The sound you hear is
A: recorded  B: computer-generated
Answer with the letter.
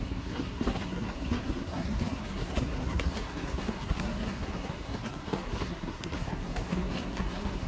B